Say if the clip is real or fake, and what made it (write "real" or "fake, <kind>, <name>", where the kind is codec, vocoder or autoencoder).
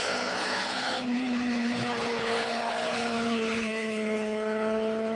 fake, codec, HILCodec